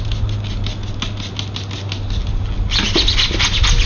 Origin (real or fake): real